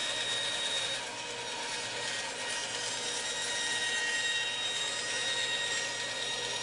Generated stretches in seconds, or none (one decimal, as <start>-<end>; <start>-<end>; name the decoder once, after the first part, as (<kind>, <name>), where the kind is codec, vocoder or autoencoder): none